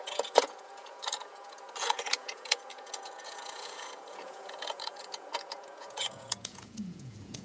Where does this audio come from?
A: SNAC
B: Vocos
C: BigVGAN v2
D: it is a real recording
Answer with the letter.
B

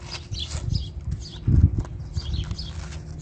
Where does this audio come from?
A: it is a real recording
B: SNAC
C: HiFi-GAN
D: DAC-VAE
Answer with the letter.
A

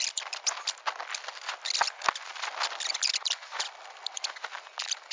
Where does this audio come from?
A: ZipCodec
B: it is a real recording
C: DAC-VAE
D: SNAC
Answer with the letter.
B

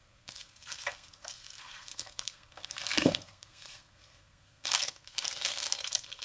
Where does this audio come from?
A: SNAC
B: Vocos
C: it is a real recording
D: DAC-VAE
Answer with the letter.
A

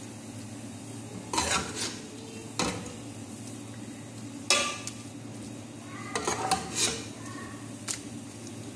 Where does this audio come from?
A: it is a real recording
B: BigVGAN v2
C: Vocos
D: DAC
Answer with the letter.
A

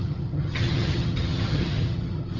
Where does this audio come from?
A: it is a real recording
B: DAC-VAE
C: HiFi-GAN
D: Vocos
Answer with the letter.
C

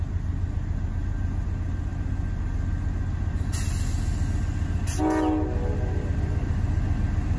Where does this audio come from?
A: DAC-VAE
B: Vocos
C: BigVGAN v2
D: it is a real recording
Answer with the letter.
D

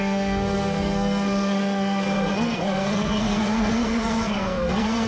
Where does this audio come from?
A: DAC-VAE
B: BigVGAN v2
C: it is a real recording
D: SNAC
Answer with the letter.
D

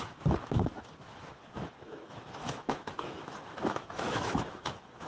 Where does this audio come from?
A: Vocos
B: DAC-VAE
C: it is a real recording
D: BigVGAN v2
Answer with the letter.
B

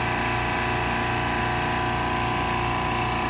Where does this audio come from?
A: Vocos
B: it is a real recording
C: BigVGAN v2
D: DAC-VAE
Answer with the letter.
B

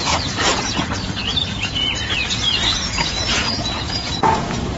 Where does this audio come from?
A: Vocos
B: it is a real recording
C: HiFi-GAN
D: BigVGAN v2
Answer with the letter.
A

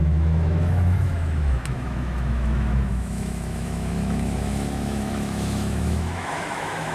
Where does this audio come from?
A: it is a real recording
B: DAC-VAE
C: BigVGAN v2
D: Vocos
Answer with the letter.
B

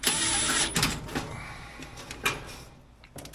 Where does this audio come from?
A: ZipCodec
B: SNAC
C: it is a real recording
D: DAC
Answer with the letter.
C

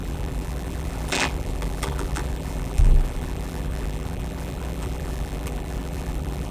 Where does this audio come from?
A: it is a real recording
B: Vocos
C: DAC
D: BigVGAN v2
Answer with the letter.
D